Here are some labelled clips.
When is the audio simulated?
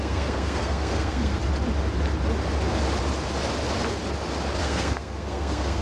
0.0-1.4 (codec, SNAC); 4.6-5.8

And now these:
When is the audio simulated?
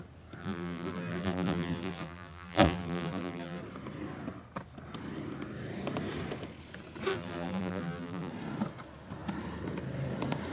0.4-3.6 (vocoder, BigVGAN v2); 7.1-8.3